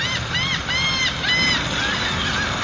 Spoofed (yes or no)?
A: no